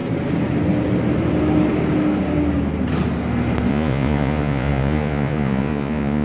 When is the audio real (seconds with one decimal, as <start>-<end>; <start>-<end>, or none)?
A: 0.0-3.7